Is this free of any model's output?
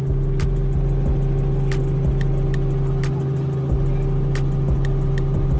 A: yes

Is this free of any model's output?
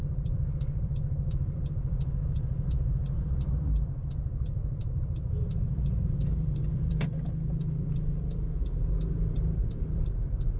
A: no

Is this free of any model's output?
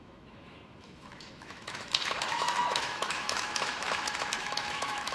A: no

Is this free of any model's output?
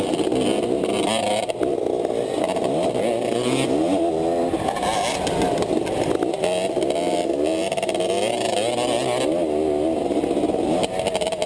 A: yes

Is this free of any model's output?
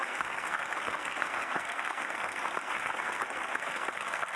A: no